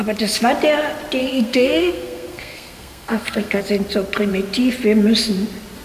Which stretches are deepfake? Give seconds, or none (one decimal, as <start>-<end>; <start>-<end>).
1.2-3.6